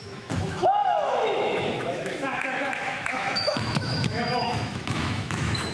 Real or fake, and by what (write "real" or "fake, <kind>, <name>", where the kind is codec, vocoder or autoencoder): fake, autoencoder, DAC-VAE